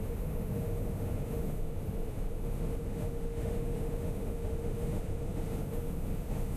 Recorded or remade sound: remade